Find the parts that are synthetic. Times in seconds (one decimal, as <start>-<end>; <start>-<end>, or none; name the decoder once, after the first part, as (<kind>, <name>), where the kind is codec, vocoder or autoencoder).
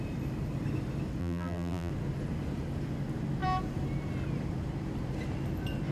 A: 1.2-1.9 (vocoder, BigVGAN v2)